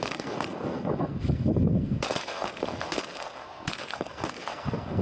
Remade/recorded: remade